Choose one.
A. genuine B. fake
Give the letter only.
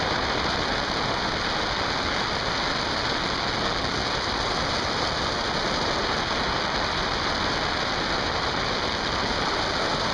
A